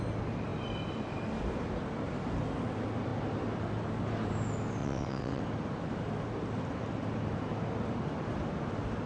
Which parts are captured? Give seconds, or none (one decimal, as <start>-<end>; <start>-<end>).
0.0-4.8; 5.4-9.1